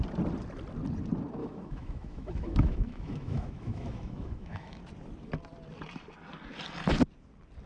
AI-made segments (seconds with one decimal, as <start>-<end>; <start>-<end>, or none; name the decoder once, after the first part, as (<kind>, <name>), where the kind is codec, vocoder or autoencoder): 1.4-4.8 (autoencoder, DAC-VAE)